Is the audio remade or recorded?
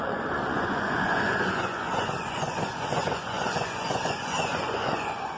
remade